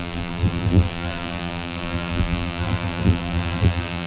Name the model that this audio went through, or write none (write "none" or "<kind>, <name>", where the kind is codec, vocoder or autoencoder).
vocoder, BigVGAN v2